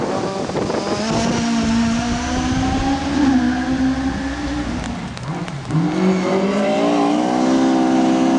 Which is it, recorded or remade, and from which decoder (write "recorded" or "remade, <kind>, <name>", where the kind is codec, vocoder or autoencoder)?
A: recorded